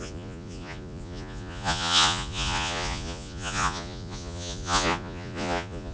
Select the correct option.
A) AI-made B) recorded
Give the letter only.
A